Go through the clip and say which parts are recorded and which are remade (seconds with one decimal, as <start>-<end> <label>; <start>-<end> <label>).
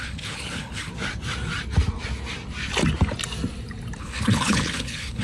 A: 0.0-0.9 remade; 0.9-4.0 recorded; 4.0-5.2 remade